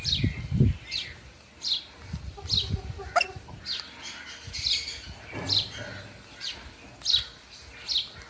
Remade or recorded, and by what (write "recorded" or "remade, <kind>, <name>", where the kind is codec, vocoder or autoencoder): recorded